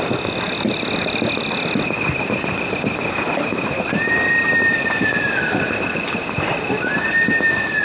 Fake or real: real